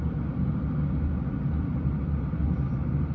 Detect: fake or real real